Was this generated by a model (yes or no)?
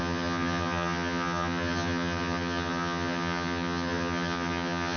yes